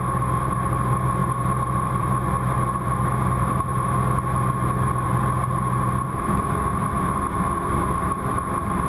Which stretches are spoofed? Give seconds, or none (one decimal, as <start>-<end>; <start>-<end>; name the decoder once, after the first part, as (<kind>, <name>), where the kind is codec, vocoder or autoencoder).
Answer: 0.0-8.9 (vocoder, BigVGAN v2)